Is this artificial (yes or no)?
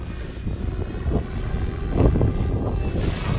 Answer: no